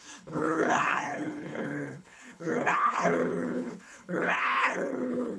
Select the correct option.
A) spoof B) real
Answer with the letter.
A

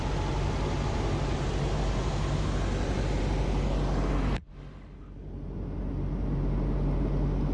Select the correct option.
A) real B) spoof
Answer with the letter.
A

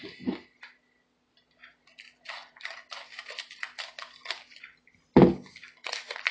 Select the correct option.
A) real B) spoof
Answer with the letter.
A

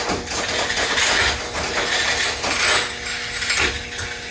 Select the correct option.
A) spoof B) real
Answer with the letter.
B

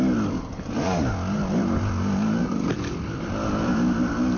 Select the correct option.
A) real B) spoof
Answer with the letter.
A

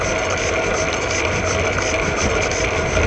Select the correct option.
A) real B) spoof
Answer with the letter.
A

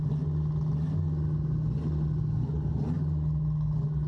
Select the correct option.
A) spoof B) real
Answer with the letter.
B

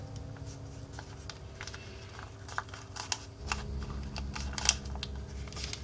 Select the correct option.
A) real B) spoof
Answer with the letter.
A